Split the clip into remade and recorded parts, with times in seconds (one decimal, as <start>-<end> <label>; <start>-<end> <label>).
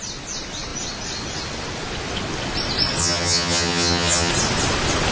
0.0-3.0 recorded; 3.0-4.3 remade; 4.3-5.1 recorded